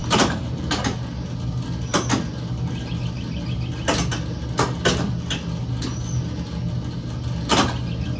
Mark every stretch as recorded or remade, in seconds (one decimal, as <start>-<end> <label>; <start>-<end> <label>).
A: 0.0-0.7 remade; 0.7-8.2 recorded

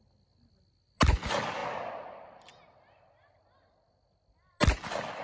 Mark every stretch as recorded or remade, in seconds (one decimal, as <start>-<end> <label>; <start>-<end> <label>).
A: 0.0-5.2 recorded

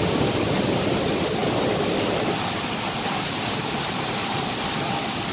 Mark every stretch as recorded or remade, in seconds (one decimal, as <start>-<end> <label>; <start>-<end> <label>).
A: 0.0-5.3 recorded

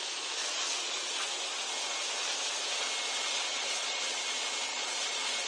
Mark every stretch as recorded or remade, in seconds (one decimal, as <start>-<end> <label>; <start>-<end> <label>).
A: 0.0-0.4 recorded; 0.4-1.3 remade; 1.3-3.5 recorded; 3.5-4.2 remade; 4.2-4.7 recorded; 4.7-5.5 remade

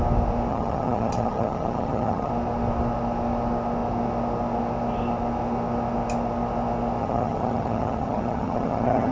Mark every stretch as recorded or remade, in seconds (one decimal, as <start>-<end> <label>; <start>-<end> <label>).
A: 0.0-0.5 recorded; 0.5-2.3 remade; 2.3-7.0 recorded; 7.0-9.1 remade

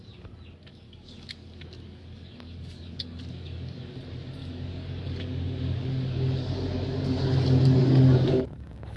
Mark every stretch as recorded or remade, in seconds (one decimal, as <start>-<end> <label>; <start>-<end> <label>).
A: 0.0-0.7 recorded; 0.7-3.9 remade; 3.9-4.4 recorded; 4.4-9.0 remade

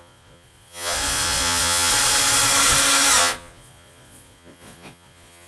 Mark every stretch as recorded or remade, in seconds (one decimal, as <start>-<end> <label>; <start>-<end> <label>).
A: 0.0-1.9 remade; 1.9-3.2 recorded; 3.2-5.5 remade

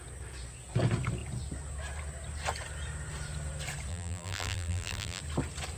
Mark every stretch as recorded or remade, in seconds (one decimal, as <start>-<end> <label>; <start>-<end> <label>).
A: 0.0-3.9 recorded; 3.9-5.2 remade; 5.2-5.8 recorded